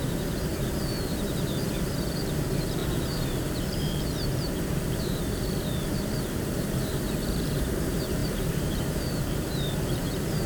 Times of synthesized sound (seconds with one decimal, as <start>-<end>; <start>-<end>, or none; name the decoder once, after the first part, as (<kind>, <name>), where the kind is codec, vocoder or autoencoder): 0.0-0.5 (vocoder, BigVGAN v2); 2.2-10.5